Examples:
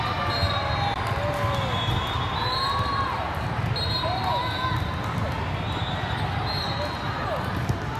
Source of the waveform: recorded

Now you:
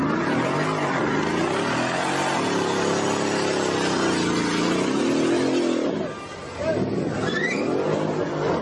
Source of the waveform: recorded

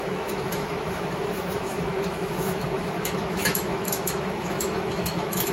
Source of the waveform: remade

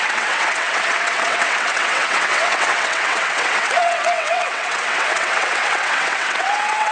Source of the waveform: remade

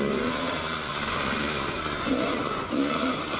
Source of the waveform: remade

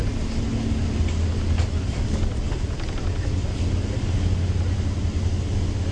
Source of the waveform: recorded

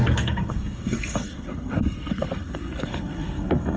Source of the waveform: remade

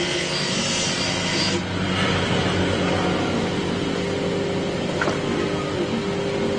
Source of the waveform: recorded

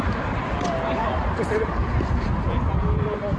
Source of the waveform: recorded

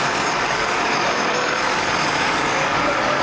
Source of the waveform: remade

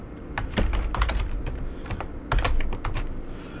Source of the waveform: recorded